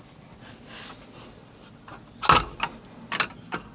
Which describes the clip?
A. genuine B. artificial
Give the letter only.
A